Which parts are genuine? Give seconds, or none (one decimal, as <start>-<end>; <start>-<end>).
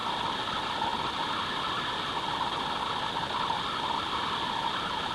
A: 0.0-5.1